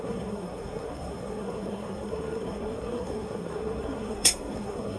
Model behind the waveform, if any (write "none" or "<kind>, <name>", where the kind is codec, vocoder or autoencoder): codec, SNAC